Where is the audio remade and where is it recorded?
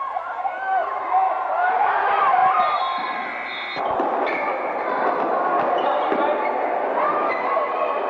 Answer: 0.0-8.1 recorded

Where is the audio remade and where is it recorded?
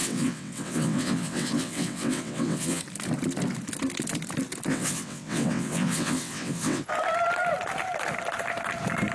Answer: 0.0-2.8 remade; 2.8-4.7 recorded; 4.7-6.9 remade; 6.9-9.1 recorded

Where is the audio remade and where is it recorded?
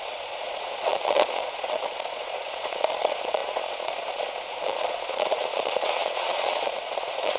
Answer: 0.0-7.4 remade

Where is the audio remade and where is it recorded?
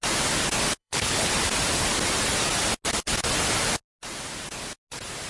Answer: 0.0-0.8 recorded; 0.8-1.3 remade; 1.3-5.3 recorded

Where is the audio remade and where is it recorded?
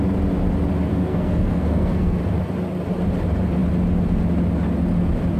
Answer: 0.0-0.9 recorded; 0.9-2.2 remade; 2.2-5.4 recorded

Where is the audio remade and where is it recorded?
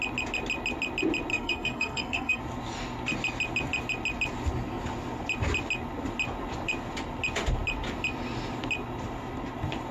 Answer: 0.0-1.3 recorded; 1.3-2.4 remade; 2.4-9.9 recorded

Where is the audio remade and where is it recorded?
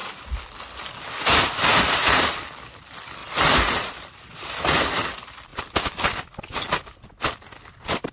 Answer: 0.0-1.7 recorded; 1.7-2.4 remade; 2.4-3.2 recorded; 3.2-4.9 remade; 4.9-8.1 recorded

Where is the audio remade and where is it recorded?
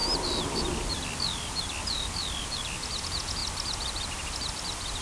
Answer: 0.0-3.0 recorded; 3.0-3.4 remade; 3.4-5.0 recorded